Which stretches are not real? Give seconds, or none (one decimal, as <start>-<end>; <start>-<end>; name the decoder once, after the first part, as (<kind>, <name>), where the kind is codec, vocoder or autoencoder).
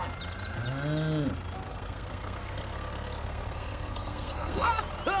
1.7-4.8 (codec, SNAC)